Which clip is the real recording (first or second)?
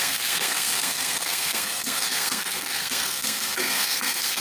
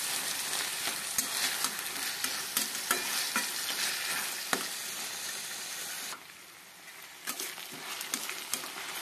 second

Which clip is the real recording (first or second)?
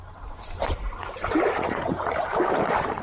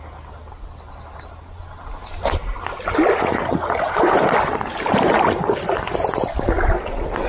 second